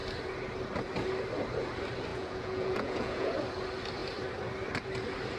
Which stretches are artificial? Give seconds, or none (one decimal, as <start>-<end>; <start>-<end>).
2.1-3.3